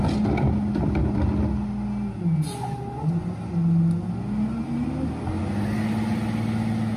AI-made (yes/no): no